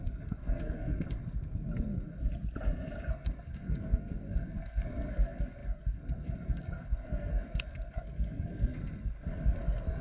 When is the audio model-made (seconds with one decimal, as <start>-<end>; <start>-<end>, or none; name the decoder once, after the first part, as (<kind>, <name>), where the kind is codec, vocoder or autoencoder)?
0.0-2.2 (codec, SNAC); 3.1-10.0